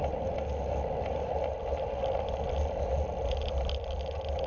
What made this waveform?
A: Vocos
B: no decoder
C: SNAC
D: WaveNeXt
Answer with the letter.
B